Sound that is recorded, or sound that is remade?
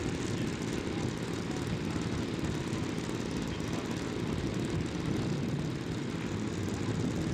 recorded